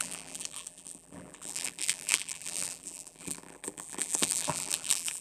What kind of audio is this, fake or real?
fake